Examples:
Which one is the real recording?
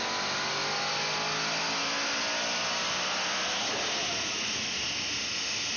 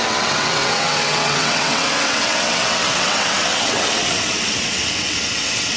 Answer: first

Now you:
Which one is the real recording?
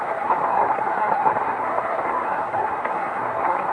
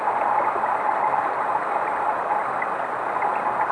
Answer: second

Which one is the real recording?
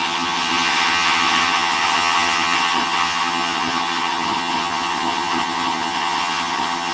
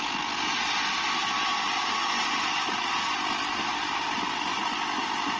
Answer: second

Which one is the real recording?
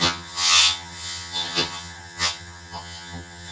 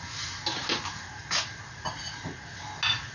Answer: second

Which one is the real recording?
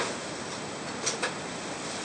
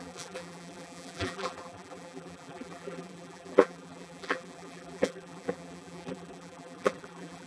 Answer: first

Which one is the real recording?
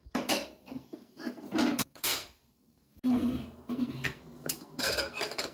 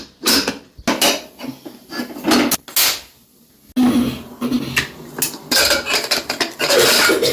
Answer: second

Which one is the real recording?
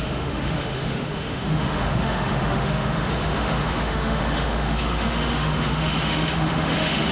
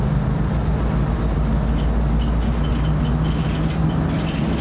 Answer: second